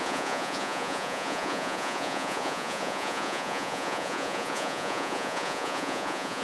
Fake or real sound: fake